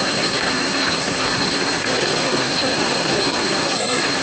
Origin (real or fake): fake